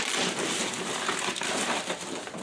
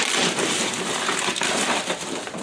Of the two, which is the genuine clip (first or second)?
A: first